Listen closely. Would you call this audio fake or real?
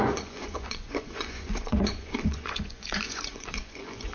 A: fake